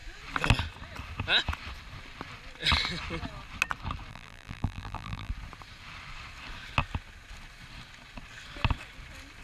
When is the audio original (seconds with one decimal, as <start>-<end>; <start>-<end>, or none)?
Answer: 0.0-4.1; 5.3-9.4